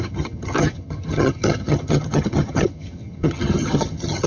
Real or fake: fake